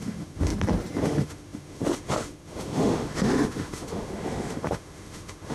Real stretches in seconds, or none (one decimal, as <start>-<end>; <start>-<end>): 0.5-1.0